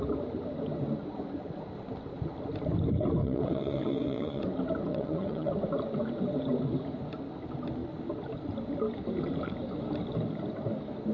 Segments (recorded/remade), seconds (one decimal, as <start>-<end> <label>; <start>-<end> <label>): 0.0-3.2 recorded; 3.2-4.4 remade; 4.4-4.9 recorded; 4.9-5.5 remade; 5.5-11.1 recorded